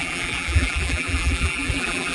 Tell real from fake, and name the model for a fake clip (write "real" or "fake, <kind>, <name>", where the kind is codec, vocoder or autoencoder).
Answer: fake, vocoder, BigVGAN v2